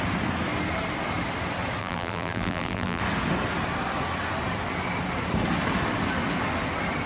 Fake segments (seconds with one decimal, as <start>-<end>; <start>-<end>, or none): 1.8-3.0